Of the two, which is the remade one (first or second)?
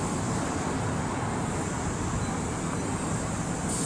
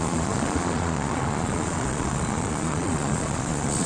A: second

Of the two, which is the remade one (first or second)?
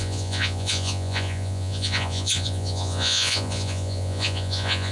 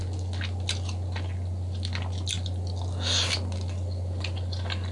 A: first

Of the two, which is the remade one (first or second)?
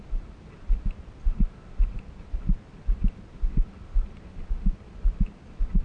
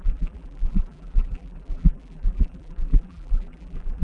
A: second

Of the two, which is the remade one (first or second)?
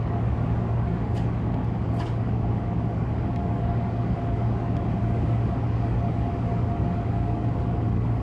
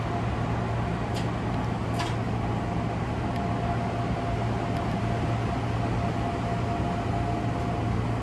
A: first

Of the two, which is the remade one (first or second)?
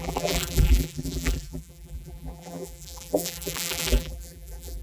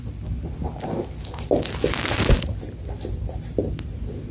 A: first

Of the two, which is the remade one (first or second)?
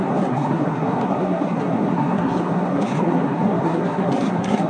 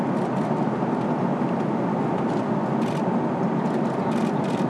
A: first